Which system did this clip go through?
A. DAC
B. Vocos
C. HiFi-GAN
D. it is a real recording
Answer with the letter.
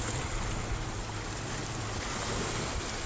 D